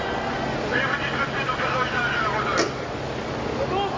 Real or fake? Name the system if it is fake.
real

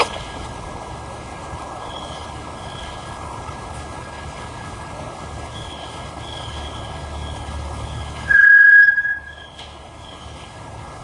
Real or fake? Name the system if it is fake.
fake, codec, HILCodec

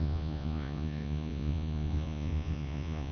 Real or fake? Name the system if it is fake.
fake, vocoder, Vocos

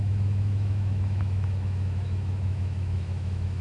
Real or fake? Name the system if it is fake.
fake, autoencoder, DAC-VAE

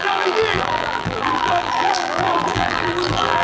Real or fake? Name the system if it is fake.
fake, vocoder, BigVGAN v2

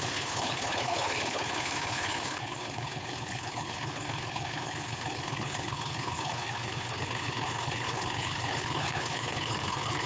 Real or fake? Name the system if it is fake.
fake, codec, HILCodec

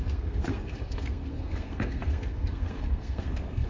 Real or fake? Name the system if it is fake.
fake, codec, SNAC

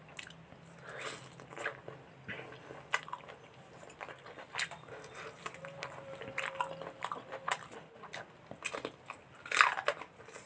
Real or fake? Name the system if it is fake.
real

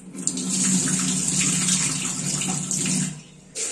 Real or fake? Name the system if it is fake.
real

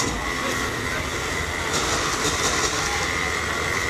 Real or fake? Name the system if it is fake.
real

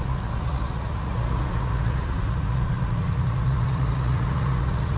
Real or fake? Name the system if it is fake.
fake, vocoder, Vocos